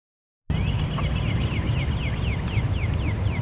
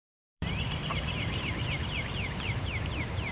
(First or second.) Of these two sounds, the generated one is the second